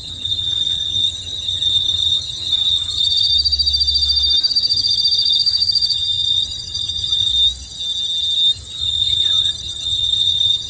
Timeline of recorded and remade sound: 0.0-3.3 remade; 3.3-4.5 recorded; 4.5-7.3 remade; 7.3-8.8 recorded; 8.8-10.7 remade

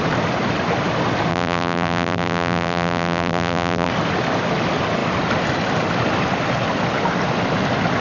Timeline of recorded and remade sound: 0.0-1.3 recorded; 1.3-3.9 remade; 3.9-8.0 recorded

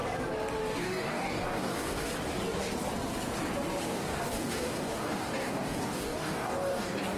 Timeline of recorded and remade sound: 0.0-0.8 recorded; 0.8-2.1 remade; 2.1-3.8 recorded; 3.8-7.2 remade

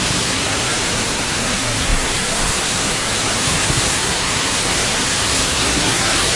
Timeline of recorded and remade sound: 0.0-6.4 remade

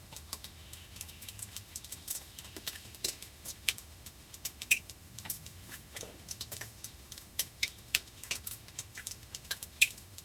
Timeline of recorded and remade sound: 0.0-10.2 remade